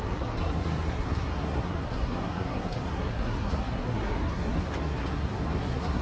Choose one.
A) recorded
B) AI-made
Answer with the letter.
B